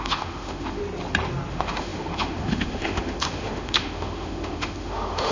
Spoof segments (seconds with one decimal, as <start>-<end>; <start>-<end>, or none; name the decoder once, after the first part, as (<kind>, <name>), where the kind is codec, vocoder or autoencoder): 0.0-0.8 (autoencoder, DAC-VAE); 1.5-5.3